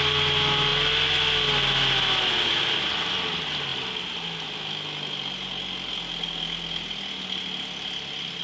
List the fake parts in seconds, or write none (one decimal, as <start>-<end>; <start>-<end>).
none